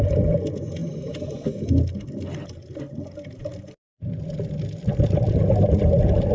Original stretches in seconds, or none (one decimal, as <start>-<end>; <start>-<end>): 0.0-6.3

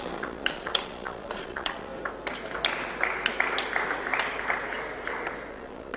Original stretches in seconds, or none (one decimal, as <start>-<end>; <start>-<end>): 1.9-5.5

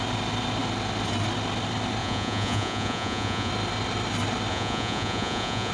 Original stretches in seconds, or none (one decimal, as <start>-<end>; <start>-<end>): 0.0-2.0; 3.5-4.5

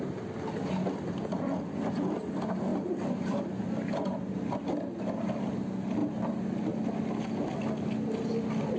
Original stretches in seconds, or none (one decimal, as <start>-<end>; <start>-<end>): 0.0-6.0; 6.7-8.8

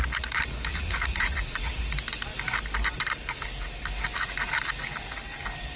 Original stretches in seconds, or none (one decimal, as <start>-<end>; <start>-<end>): 0.0-0.7; 1.8-5.8

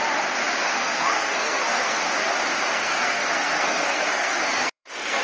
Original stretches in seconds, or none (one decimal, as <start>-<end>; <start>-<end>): 0.0-0.6; 2.0-2.7

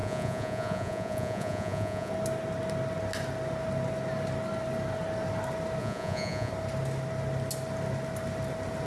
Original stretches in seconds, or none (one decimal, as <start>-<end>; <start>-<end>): 2.1-5.8; 6.5-8.9